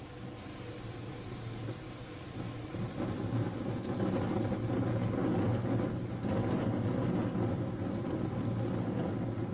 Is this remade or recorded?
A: recorded